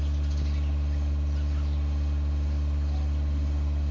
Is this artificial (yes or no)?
no